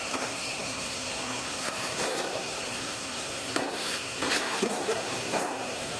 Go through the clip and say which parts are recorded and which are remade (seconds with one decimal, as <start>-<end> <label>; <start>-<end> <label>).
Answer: 0.0-6.0 remade